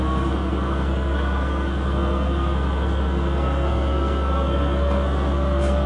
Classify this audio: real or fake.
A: fake